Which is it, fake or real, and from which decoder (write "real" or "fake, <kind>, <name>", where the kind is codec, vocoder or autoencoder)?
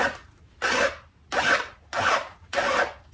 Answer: real